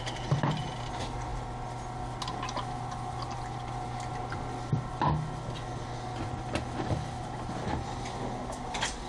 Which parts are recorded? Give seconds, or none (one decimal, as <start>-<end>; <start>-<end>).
0.0-9.1